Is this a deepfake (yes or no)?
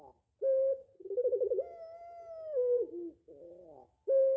no